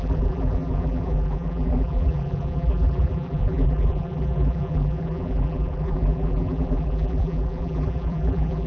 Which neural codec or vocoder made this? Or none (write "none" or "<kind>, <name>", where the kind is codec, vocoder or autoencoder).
vocoder, BigVGAN v2